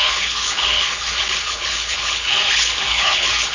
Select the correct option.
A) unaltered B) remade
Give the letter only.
B